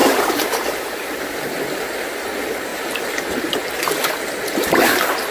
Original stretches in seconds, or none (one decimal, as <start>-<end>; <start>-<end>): 1.2-2.7; 3.9-5.3